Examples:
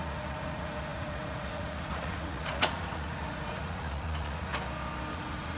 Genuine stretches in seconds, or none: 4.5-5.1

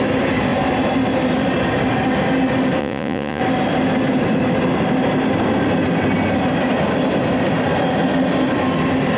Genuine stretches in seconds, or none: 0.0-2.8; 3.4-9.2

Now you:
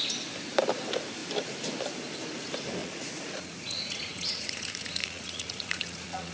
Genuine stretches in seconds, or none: 0.0-2.8